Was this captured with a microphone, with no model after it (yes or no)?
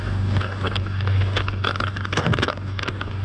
no